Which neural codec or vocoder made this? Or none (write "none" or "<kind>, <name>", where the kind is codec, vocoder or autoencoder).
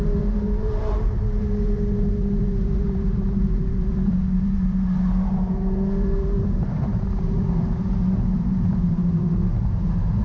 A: vocoder, BigVGAN v2